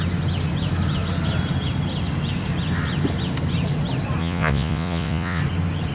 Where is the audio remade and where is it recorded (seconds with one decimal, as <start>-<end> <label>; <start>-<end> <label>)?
0.0-4.2 recorded; 4.2-5.4 remade; 5.4-5.9 recorded